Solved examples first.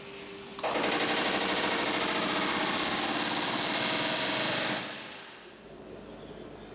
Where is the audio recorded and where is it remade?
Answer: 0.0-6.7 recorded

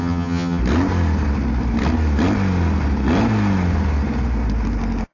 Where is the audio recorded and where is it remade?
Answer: 0.0-0.6 remade; 0.6-5.1 recorded

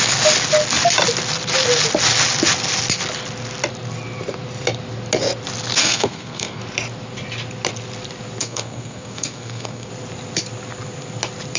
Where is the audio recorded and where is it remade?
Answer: 0.0-5.8 recorded; 5.8-6.6 remade; 6.6-8.4 recorded; 8.4-9.9 remade; 9.9-11.6 recorded

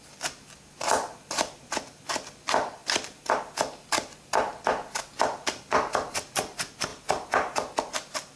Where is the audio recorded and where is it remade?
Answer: 0.0-2.8 recorded; 2.8-3.4 remade; 3.4-6.9 recorded; 6.9-7.8 remade; 7.8-8.4 recorded